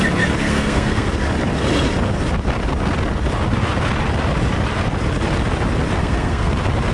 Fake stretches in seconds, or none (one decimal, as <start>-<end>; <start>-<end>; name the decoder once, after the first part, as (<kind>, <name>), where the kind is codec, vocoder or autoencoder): 0.4-1.1 (codec, SNAC); 6.0-6.5